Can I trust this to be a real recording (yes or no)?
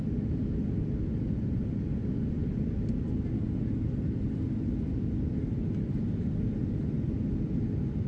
yes